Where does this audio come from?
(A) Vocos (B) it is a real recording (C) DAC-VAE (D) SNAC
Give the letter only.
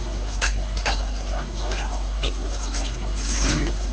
D